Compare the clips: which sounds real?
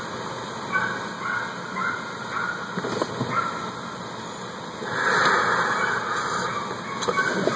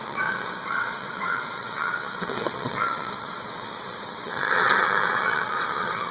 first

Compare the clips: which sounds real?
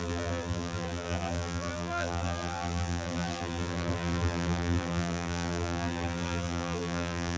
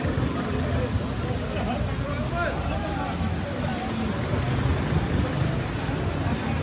second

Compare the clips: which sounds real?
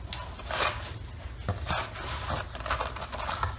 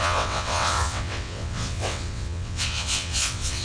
first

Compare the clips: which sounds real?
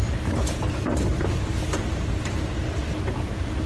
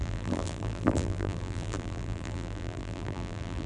first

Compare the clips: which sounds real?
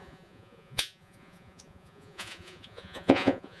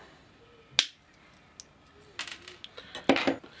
second